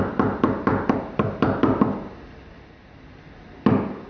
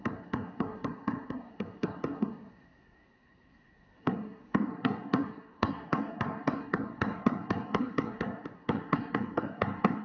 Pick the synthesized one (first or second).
second